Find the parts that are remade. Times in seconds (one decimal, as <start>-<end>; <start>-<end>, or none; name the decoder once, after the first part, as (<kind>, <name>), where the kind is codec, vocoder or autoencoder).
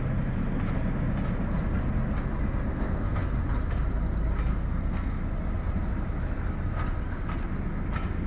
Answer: 2.7-3.2 (codec, SNAC); 4.5-5.2